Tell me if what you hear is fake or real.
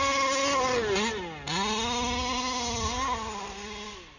real